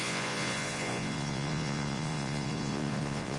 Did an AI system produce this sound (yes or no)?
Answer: yes